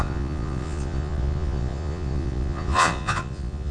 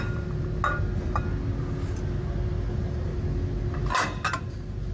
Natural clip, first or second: second